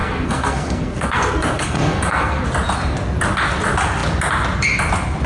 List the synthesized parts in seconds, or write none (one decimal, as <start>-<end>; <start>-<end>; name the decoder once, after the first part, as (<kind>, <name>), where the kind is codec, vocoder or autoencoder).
0.0-2.4 (codec, SNAC)